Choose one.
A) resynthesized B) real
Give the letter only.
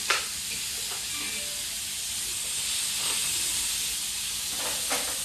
B